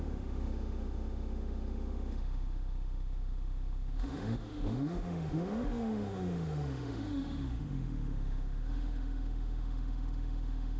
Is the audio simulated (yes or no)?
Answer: yes